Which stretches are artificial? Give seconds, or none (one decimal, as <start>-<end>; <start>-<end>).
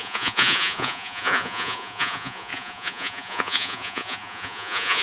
0.0-5.0